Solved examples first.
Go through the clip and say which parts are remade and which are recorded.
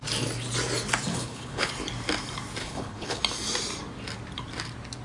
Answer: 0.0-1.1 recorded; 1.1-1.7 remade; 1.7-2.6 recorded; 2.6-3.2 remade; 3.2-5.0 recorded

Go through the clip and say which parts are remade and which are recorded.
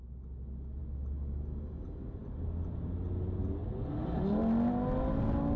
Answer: 0.0-5.6 recorded